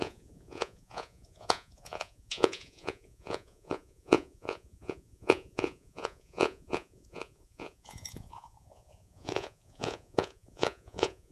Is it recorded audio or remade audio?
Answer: remade